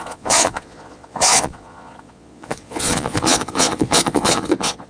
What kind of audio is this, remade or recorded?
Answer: remade